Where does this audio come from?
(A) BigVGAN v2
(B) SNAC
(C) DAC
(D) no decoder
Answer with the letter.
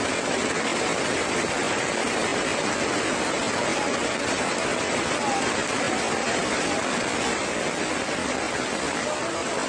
D